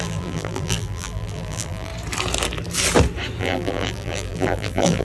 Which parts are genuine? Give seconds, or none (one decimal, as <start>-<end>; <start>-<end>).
1.9-3.4